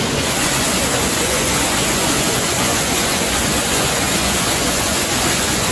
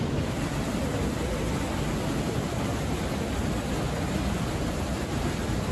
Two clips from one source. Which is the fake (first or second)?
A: first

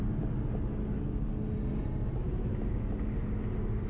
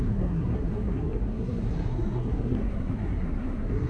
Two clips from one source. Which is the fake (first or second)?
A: second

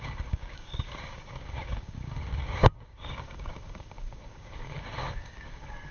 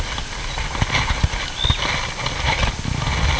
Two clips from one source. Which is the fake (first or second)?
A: first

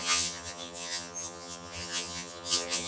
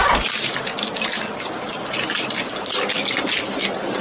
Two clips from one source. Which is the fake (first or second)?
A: first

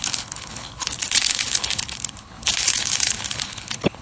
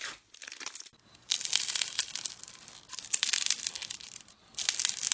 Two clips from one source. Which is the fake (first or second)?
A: first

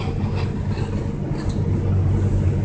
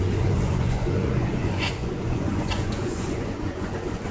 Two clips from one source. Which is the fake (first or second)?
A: second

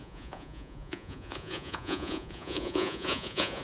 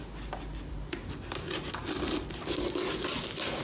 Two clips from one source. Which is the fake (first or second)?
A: first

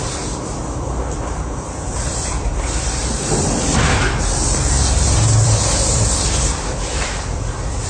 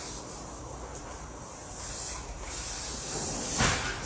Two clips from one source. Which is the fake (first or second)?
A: first